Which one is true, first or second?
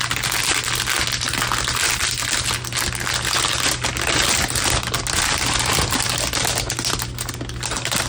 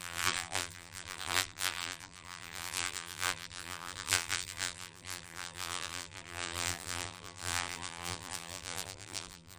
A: first